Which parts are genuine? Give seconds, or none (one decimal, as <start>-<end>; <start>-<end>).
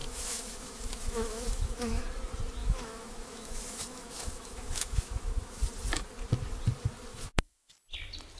2.0-2.6; 5.6-7.1; 7.7-8.4